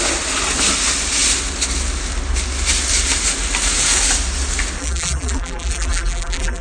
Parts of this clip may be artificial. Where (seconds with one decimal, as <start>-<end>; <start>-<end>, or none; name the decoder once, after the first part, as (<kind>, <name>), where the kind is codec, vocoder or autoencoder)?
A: 4.8-6.6 (vocoder, BigVGAN v2)